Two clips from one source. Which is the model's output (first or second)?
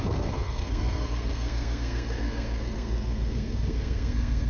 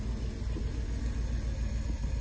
first